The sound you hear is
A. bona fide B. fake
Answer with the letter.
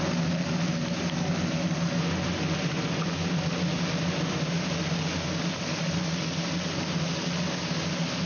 A